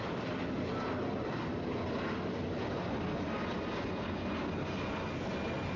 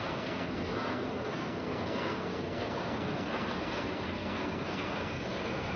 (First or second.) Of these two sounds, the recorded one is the first